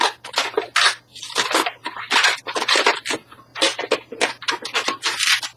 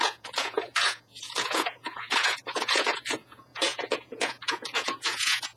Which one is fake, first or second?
second